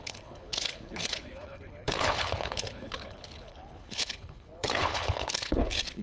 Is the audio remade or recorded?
remade